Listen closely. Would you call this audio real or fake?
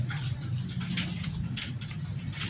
real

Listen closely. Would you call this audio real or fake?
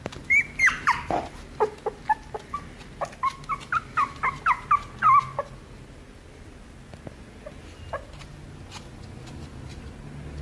real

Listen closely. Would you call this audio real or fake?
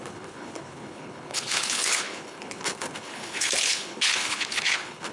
fake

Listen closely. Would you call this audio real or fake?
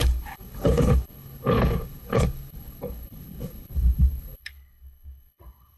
fake